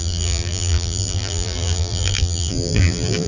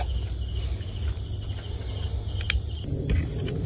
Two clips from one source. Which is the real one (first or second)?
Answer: second